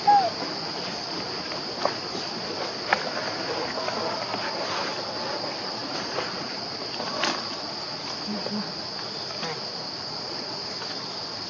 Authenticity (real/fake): real